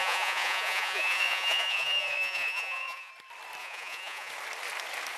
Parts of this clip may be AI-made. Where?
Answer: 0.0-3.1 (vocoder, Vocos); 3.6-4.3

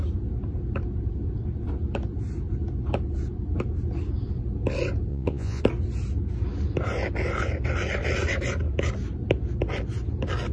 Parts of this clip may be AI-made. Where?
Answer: 5.1-5.6 (vocoder, Vocos)

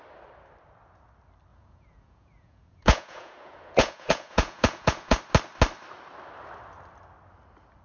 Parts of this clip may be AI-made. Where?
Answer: 1.5-5.2 (vocoder, Vocos)

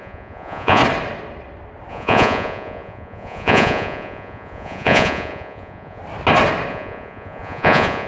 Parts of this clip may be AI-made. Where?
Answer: 0.0-0.8 (vocoder, Vocos); 1.9-6.0; 6.7-8.1

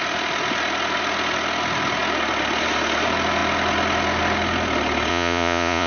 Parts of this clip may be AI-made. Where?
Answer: 5.1-5.9 (vocoder, Vocos)

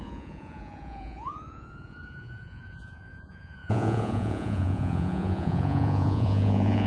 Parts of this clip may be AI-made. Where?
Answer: 0.0-6.9 (vocoder, Vocos)

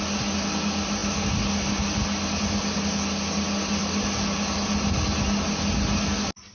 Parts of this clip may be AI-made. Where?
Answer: none